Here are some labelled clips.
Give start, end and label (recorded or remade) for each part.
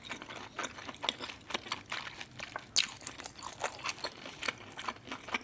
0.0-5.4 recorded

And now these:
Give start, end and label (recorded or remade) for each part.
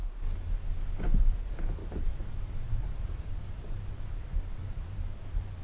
0.0-1.8 recorded; 1.8-5.1 remade; 5.1-5.6 recorded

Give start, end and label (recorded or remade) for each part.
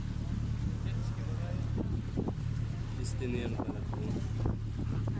0.0-1.0 recorded; 1.0-2.8 remade; 2.8-5.2 recorded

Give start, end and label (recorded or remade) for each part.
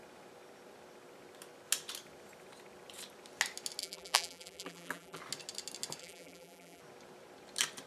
0.0-3.8 recorded; 3.8-5.2 remade; 5.2-6.0 recorded; 6.0-6.8 remade; 6.8-7.9 recorded